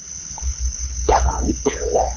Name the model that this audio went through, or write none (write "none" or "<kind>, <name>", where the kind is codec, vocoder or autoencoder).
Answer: codec, HILCodec